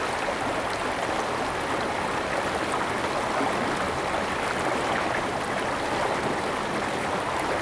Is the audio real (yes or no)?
yes